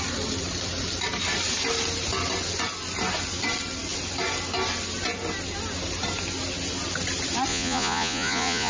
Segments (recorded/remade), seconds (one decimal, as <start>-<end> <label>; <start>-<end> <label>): 0.0-7.5 recorded; 7.5-8.7 remade